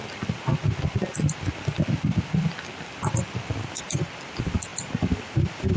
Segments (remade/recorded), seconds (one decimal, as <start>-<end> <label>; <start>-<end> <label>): 0.0-3.5 recorded; 3.5-5.8 remade